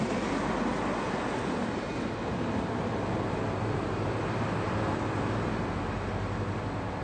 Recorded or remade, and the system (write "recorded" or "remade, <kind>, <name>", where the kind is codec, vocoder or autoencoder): recorded